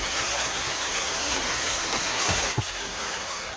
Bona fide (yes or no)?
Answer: no